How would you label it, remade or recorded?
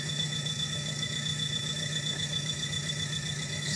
remade